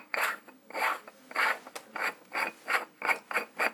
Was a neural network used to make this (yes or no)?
no